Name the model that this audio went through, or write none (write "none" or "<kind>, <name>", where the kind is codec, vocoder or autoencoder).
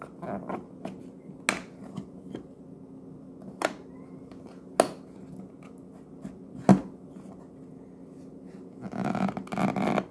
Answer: none